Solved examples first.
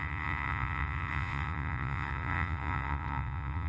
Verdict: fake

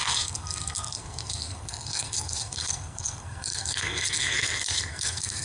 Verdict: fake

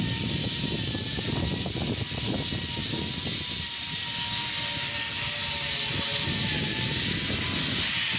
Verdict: real